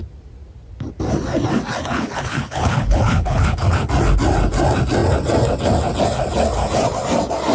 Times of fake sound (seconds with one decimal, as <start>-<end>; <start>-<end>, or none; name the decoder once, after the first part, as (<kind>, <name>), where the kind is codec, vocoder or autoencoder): 1.8-3.9 (codec, HILCodec)